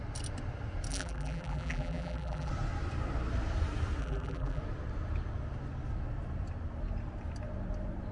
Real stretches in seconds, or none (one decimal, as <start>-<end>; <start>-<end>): 0.0-0.9; 2.5-4.0; 4.6-8.1